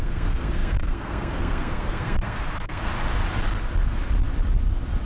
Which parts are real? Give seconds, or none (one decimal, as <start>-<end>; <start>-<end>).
2.9-5.1